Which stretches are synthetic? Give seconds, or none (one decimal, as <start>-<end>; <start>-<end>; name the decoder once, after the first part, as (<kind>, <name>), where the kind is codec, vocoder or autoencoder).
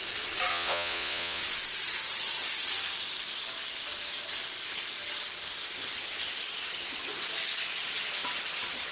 0.5-1.4 (vocoder, Vocos)